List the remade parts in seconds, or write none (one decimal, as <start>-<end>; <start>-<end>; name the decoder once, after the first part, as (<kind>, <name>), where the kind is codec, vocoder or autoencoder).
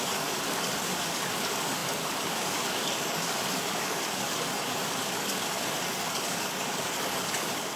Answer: 0.0-7.8 (codec, DAC)